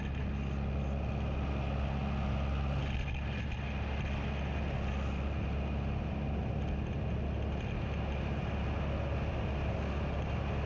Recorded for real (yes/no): yes